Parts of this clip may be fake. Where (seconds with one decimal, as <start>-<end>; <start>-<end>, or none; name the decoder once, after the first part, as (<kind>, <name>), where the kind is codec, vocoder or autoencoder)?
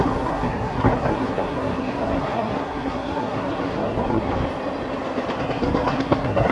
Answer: 0.0-4.3 (codec, SNAC); 5.4-6.5